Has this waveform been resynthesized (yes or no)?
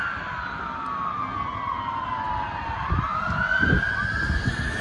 no